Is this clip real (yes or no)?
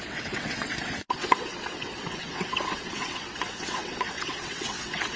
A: no